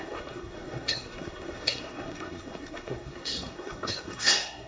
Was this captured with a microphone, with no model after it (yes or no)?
no